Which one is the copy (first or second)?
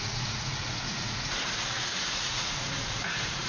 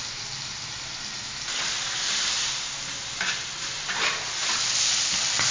first